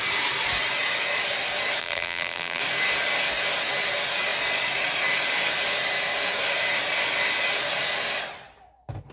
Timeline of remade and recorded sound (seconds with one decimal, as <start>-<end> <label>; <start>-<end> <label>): 0.0-1.8 recorded; 1.8-2.6 remade; 2.6-9.1 recorded